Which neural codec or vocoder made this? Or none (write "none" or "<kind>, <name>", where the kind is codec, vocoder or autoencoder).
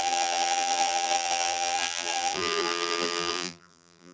vocoder, BigVGAN v2